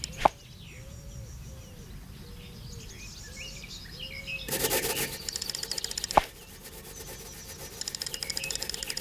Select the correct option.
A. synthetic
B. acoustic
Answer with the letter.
B